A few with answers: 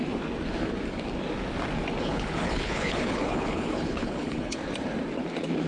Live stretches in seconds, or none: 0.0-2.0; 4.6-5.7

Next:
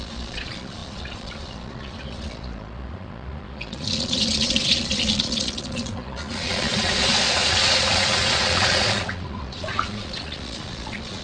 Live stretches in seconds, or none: none

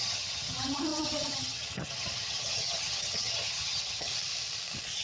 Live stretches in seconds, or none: 4.1-5.0

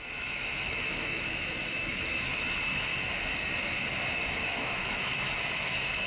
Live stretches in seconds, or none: 2.9-4.2

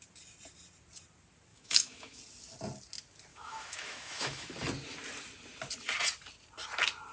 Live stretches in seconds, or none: 0.0-1.5; 2.2-3.3; 4.5-7.1

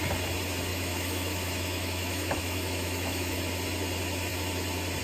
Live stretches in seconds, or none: 0.0-0.7; 3.4-5.0